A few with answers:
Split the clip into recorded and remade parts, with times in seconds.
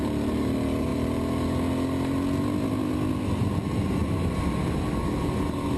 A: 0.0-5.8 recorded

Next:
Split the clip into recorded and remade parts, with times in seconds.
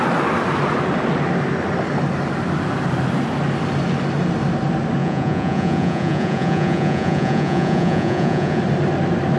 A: 0.0-5.0 recorded; 5.0-8.6 remade; 8.6-9.4 recorded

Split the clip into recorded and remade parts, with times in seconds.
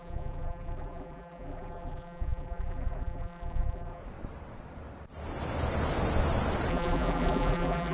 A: 0.0-4.0 remade; 4.0-6.7 recorded; 6.7-7.9 remade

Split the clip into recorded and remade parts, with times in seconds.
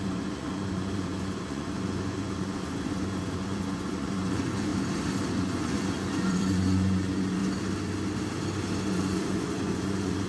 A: 0.0-4.7 remade; 4.7-5.3 recorded; 5.3-7.4 remade; 7.4-8.9 recorded; 8.9-10.3 remade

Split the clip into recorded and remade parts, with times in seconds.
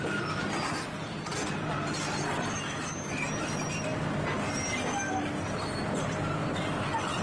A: 0.0-7.2 recorded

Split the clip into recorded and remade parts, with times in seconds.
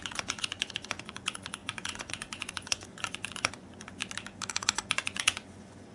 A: 0.0-4.0 remade; 4.0-4.5 recorded; 4.5-5.9 remade